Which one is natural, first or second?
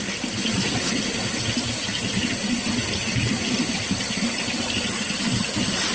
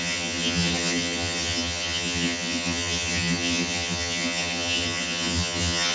first